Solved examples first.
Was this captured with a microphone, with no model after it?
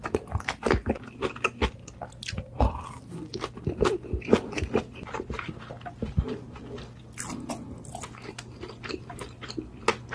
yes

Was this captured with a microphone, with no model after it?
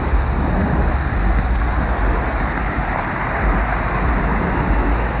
yes